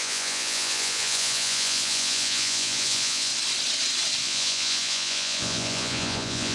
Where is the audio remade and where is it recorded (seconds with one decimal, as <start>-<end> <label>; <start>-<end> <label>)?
0.0-3.3 remade; 3.3-4.2 recorded; 4.2-6.5 remade

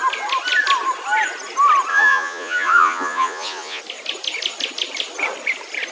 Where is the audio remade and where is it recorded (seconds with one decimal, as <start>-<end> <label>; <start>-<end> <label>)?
0.0-1.9 recorded; 1.9-3.8 remade; 3.8-5.9 recorded

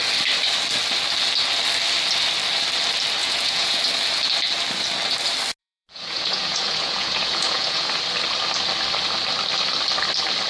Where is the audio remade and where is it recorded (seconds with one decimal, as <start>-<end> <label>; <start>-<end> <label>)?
0.0-3.2 recorded; 3.2-3.8 remade; 3.8-5.6 recorded; 5.6-8.0 remade; 8.0-10.5 recorded